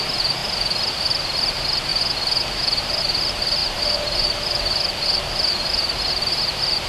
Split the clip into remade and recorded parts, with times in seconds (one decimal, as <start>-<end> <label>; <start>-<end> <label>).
0.0-0.4 remade; 0.4-0.9 recorded; 0.9-1.9 remade; 1.9-3.0 recorded; 3.0-6.9 remade